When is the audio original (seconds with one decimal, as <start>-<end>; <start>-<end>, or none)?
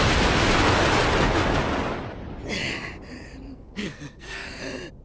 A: 0.0-3.5; 4.6-5.0